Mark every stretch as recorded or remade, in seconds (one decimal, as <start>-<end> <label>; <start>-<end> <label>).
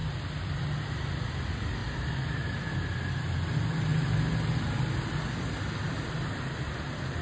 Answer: 0.0-0.6 remade; 0.6-7.2 recorded